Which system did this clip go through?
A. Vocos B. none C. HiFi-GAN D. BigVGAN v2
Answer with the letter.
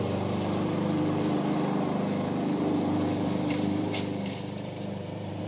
D